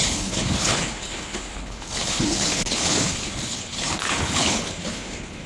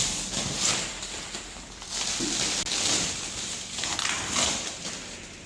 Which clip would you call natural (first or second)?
second